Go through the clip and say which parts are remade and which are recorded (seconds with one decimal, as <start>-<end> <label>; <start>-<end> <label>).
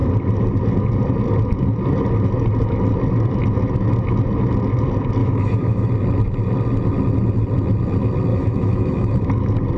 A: 0.0-5.2 recorded; 5.2-5.9 remade; 5.9-8.3 recorded; 8.3-9.3 remade; 9.3-9.8 recorded